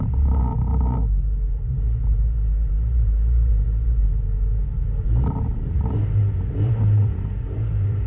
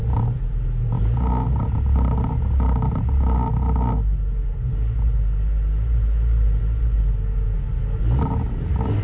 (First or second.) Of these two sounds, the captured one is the second